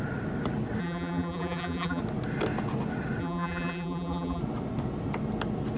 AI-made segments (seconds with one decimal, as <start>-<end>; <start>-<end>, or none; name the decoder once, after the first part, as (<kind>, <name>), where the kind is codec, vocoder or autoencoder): 0.8-2.0 (vocoder, BigVGAN v2); 3.2-4.4